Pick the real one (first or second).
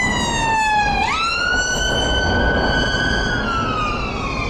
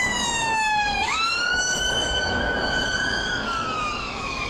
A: first